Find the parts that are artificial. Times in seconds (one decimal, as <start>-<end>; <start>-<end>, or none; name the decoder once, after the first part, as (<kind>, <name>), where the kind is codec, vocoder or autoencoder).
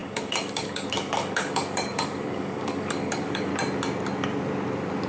0.0-3.5 (codec, DAC)